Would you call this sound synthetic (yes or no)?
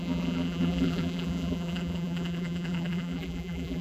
yes